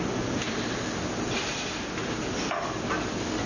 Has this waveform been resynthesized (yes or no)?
no